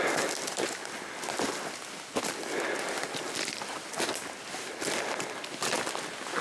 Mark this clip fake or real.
real